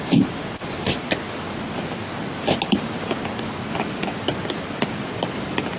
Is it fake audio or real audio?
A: real